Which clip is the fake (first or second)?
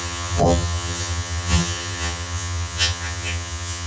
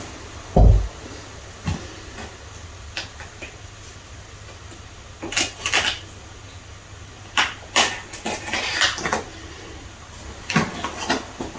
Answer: first